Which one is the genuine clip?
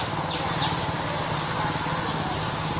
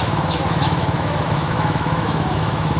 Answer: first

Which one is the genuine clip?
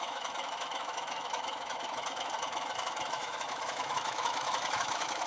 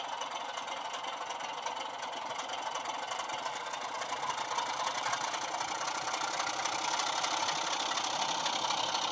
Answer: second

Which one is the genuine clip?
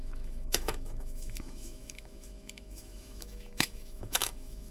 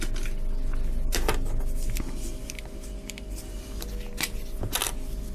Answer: second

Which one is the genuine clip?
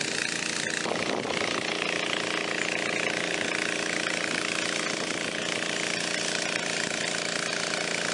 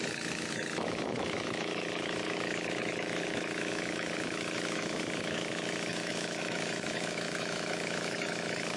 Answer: first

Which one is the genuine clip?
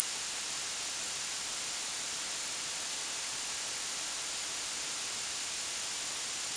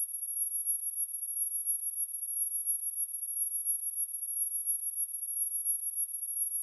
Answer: first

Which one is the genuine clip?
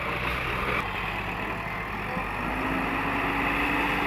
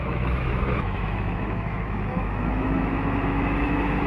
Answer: first